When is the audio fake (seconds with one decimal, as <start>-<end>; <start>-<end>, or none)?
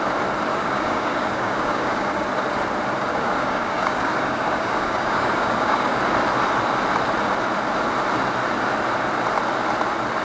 0.5-2.3; 3.1-6.0